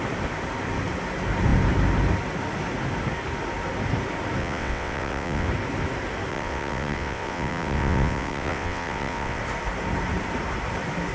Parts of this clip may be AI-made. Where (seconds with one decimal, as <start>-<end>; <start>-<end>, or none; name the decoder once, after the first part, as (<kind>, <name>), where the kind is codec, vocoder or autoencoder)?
4.4-5.5 (vocoder, WaveNeXt); 6.3-9.4